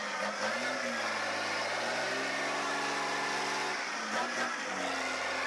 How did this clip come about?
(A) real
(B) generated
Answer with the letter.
A